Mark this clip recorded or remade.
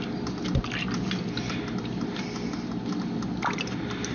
recorded